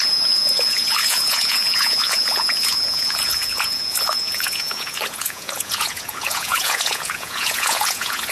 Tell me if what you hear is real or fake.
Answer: fake